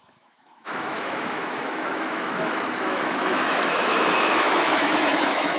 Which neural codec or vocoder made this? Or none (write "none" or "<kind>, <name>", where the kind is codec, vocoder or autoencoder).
autoencoder, DAC-VAE